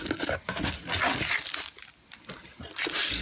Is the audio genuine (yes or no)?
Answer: yes